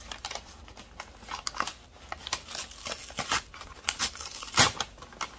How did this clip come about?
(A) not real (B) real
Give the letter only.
B